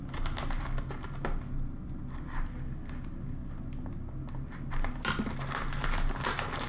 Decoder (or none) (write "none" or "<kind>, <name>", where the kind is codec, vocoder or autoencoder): none